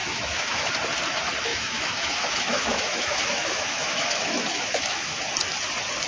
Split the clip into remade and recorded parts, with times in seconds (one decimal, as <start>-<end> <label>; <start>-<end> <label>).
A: 0.0-0.7 remade; 0.7-1.5 recorded; 1.5-5.2 remade; 5.2-6.1 recorded